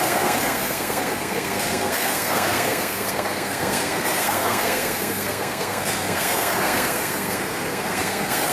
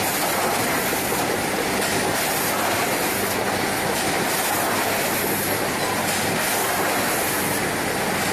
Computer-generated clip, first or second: first